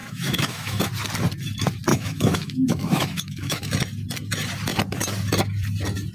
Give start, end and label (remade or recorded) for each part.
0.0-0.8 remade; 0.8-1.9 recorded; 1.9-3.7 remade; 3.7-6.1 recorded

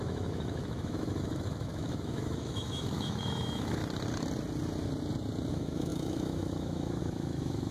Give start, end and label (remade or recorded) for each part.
0.0-3.8 remade; 3.8-5.5 recorded; 5.5-7.7 remade

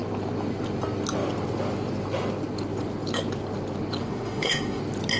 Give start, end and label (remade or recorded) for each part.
0.0-4.0 recorded; 4.0-4.8 remade; 4.8-5.2 recorded